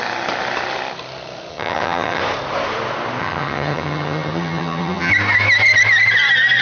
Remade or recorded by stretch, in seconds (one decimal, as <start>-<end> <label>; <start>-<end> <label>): 0.0-1.5 recorded; 1.5-2.2 remade; 2.2-3.2 recorded; 3.2-5.1 remade; 5.1-6.6 recorded

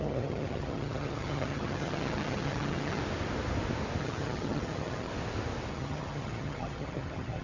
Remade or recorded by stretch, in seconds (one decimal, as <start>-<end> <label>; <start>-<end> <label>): 0.0-3.0 remade; 3.0-4.0 recorded; 4.0-5.1 remade; 5.1-5.7 recorded; 5.7-7.4 remade

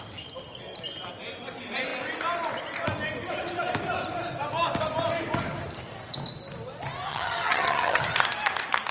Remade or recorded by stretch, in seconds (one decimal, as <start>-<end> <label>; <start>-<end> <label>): 0.0-7.1 recorded; 7.1-8.0 remade; 8.0-8.9 recorded

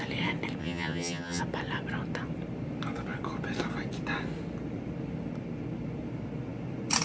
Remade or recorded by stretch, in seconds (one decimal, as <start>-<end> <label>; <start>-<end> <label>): 0.0-0.6 recorded; 0.6-1.4 remade; 1.4-7.0 recorded